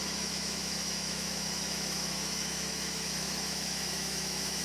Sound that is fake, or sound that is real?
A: fake